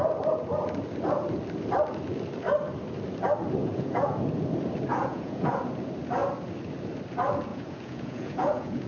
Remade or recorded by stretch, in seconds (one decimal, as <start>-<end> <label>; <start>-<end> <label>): 0.0-3.6 recorded; 3.6-4.2 remade; 4.2-4.9 recorded; 4.9-5.6 remade; 5.6-7.5 recorded; 7.5-8.9 remade